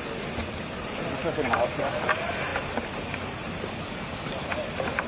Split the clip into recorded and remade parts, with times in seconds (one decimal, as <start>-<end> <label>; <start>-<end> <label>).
0.0-5.1 recorded